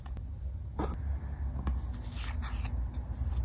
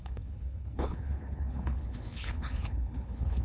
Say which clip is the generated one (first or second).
second